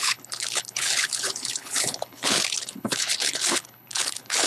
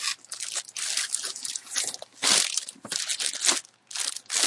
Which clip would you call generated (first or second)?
first